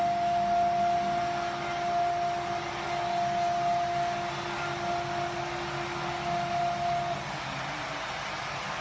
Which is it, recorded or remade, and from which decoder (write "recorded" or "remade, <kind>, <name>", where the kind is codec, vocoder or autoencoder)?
recorded